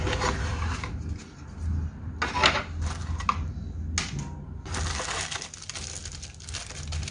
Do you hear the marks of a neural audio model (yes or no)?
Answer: no